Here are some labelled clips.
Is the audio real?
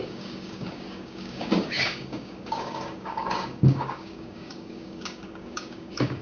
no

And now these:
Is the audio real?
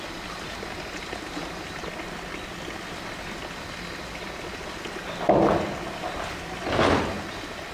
yes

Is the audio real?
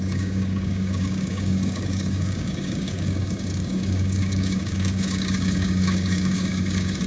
no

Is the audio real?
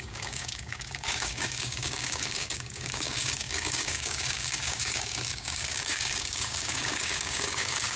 no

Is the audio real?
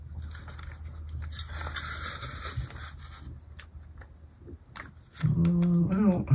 yes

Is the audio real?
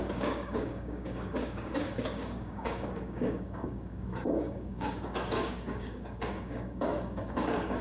no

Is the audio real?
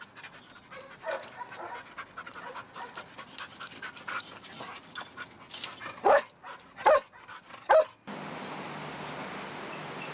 yes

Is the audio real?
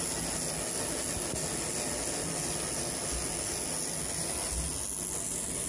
yes